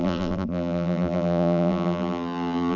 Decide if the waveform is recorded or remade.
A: remade